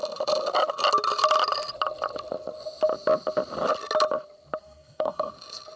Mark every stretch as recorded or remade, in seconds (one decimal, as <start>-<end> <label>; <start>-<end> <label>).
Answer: 0.0-4.6 recorded; 4.6-5.3 remade; 5.3-5.8 recorded